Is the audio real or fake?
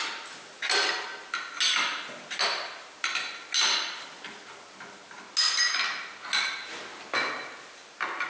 real